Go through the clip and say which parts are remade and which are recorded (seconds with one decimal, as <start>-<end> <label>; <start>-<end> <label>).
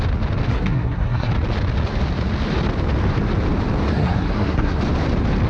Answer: 0.0-0.5 recorded; 0.5-1.3 remade; 1.3-3.9 recorded; 3.9-4.8 remade; 4.8-5.5 recorded